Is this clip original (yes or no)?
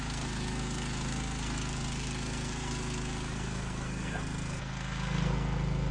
no